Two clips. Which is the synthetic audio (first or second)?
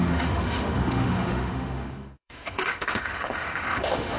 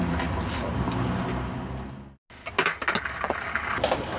first